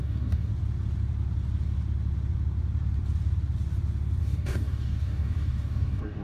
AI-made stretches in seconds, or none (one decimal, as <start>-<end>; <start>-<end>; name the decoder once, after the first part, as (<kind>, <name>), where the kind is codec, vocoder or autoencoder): 0.0-0.5 (codec, DAC); 4.2-6.2